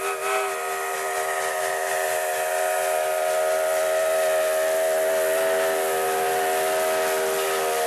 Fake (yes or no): no